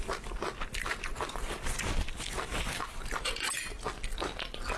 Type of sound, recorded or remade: recorded